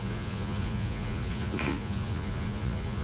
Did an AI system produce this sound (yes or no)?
yes